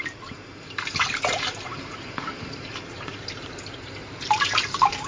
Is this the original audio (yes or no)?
no